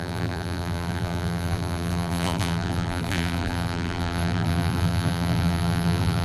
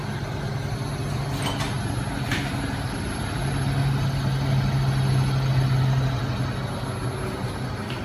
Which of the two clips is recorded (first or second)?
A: second